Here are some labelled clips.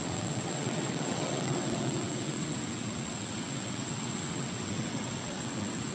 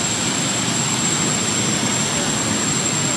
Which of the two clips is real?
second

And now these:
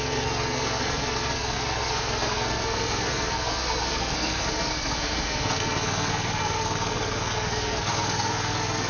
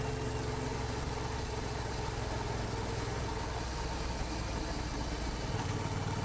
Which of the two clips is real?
second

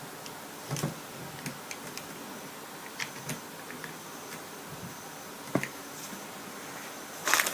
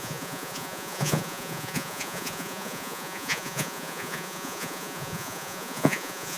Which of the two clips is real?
first